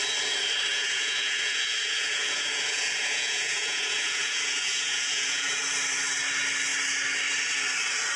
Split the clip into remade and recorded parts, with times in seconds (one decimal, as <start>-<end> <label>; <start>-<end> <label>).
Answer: 0.0-0.7 recorded; 0.7-5.6 remade; 5.6-8.2 recorded